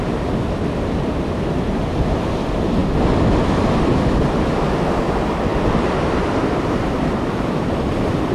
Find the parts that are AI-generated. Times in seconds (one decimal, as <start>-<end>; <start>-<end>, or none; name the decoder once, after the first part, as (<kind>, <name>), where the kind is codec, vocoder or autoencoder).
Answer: none